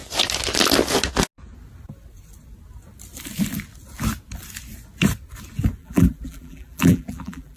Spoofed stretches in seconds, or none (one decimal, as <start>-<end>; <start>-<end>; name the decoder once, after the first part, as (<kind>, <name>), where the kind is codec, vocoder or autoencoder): 5.8-7.6 (vocoder, BigVGAN v2)